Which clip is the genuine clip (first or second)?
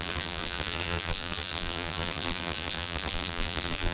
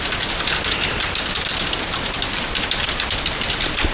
second